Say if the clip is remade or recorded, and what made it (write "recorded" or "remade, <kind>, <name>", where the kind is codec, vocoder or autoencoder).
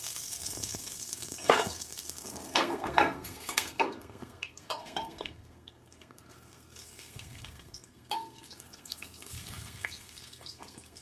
remade, codec, SNAC